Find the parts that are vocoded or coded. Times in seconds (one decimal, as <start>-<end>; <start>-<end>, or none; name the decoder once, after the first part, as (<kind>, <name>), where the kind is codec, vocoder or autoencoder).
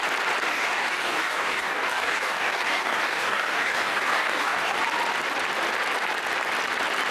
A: 0.5-4.8 (codec, DAC)